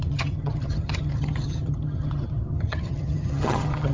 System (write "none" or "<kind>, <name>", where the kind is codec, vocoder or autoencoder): vocoder, HiFi-GAN